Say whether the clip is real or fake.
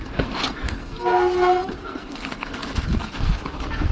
fake